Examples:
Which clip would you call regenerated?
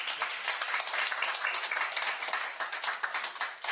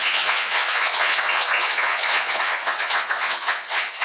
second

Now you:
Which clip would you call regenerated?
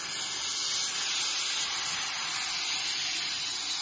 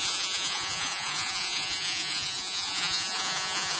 second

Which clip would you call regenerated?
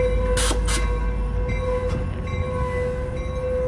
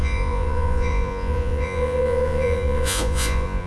second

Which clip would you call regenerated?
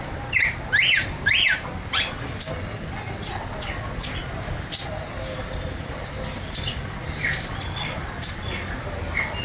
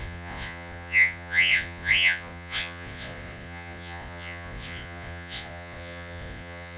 second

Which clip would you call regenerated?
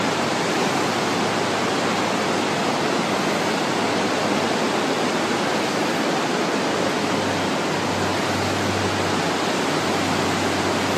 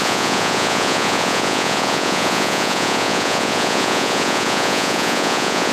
second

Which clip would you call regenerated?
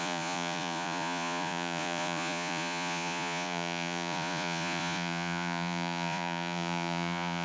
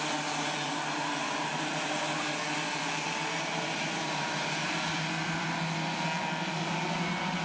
first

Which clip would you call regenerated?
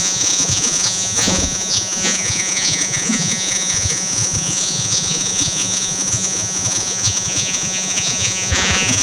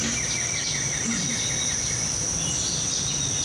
first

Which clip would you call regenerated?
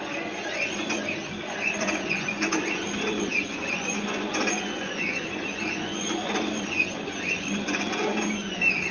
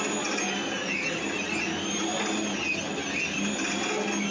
first